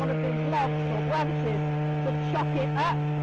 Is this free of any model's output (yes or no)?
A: yes